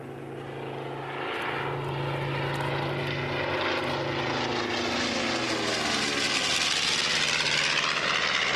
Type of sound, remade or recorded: recorded